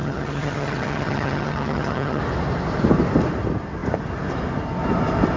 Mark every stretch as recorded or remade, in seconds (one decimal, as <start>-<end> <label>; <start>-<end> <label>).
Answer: 0.0-2.2 remade; 2.2-5.4 recorded